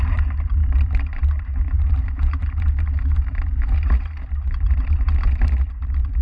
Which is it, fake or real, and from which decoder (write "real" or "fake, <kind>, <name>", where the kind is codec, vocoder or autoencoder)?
fake, vocoder, BigVGAN v2